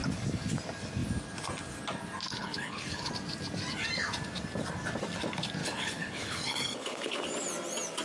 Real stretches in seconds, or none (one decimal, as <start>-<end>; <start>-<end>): 0.0-2.3; 3.1-5.6; 7.2-8.0